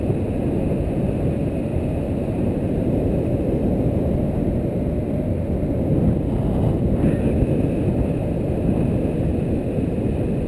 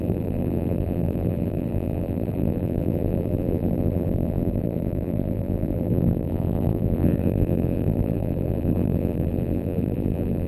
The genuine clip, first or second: first